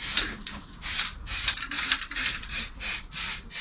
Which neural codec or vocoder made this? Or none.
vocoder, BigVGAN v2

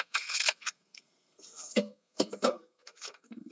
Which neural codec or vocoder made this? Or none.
codec, SNAC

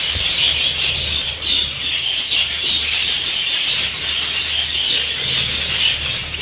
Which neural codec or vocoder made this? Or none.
none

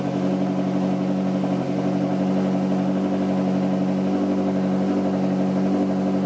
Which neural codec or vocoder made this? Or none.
none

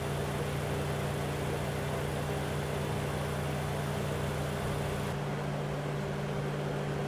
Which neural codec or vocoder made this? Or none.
none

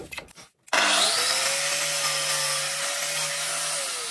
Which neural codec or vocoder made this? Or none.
none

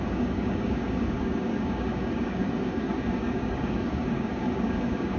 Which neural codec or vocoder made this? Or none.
codec, DAC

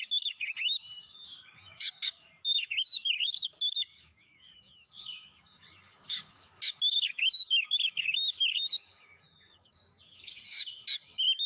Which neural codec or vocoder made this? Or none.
codec, DAC